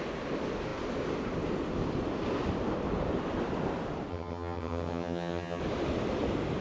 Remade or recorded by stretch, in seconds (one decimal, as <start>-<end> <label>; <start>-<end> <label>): 0.0-4.1 recorded; 4.1-5.6 remade; 5.6-6.6 recorded